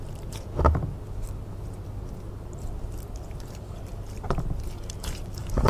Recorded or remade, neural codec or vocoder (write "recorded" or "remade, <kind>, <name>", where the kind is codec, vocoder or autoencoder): recorded